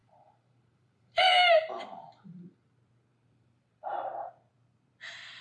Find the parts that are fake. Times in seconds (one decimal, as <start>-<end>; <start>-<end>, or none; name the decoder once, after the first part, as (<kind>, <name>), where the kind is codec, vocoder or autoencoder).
0.0-1.7 (vocoder, BigVGAN v2); 3.1-4.3